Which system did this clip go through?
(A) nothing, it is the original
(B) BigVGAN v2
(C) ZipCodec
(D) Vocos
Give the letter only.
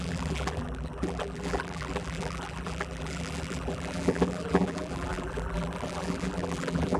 B